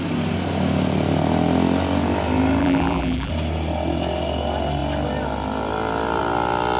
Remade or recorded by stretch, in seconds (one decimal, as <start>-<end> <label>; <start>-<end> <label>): 0.0-2.6 recorded; 2.6-3.3 remade; 3.3-6.8 recorded